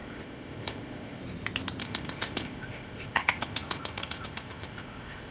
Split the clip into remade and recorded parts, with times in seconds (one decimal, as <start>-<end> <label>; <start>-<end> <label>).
0.0-1.2 remade; 1.2-1.8 recorded; 1.8-5.3 remade